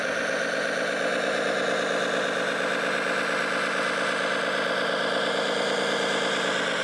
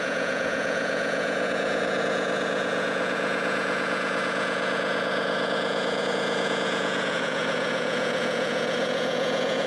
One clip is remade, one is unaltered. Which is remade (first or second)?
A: second